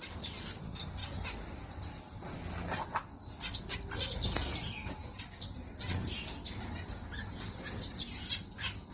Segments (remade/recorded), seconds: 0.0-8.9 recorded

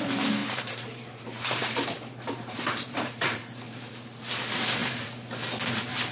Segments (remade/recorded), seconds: 0.0-0.4 recorded; 0.4-3.9 remade; 3.9-4.8 recorded; 4.8-5.4 remade; 5.4-6.1 recorded

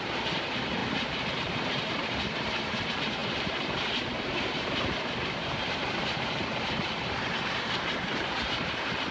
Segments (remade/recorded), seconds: 0.0-9.1 remade

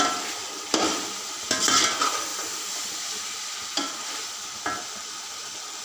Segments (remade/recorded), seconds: 0.0-2.3 recorded; 2.3-5.8 remade